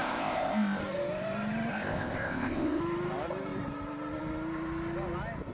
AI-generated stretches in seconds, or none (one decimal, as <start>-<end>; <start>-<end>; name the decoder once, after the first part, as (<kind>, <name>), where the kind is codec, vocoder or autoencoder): 0.0-0.8 (codec, ZipCodec); 1.7-2.8